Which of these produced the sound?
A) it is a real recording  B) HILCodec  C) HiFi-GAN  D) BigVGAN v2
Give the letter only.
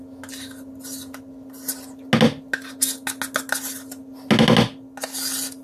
A